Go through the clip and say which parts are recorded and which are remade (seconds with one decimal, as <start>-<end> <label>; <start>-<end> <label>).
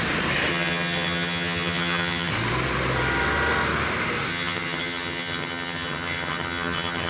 0.0-0.5 recorded; 0.5-2.3 remade; 2.3-4.3 recorded; 4.3-7.1 remade